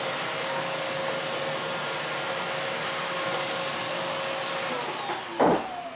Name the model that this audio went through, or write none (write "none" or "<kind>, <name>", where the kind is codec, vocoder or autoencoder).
none